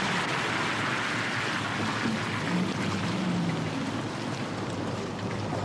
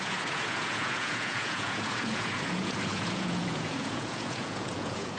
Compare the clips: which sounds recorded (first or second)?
first